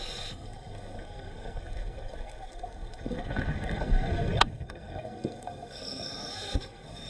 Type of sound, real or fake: fake